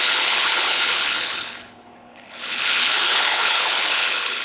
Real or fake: fake